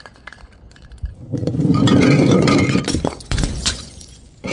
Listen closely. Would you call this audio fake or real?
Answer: fake